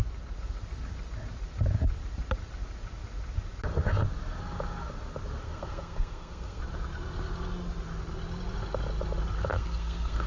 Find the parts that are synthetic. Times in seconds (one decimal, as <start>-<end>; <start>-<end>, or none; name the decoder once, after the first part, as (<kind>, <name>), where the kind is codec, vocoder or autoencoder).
5.4-6.6 (codec, SNAC); 9.5-10.3